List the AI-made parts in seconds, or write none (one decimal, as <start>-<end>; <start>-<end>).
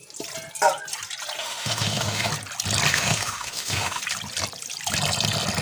1.4-2.3; 2.9-4.0